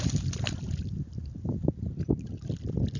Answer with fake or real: real